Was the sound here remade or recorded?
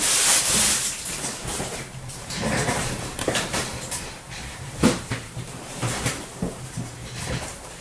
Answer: remade